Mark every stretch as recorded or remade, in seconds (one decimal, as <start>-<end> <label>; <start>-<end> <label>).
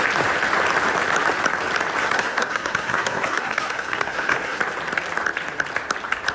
0.0-2.0 recorded; 2.0-4.6 remade; 4.6-6.3 recorded